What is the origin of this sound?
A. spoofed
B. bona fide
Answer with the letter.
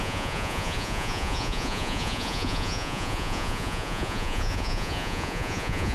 A